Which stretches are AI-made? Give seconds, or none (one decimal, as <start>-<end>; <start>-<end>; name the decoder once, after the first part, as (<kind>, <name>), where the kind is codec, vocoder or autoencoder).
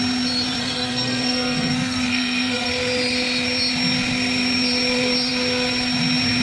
0.6-2.7 (codec, SNAC)